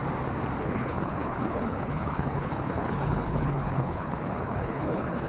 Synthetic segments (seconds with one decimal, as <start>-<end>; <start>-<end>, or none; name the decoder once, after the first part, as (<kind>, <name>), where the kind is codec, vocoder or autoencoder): 0.6-5.3 (codec, HILCodec)